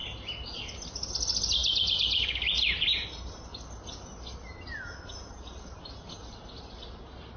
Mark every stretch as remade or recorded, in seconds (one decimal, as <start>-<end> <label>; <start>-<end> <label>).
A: 0.0-7.4 recorded